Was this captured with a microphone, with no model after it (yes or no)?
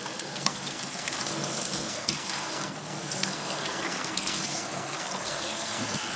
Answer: no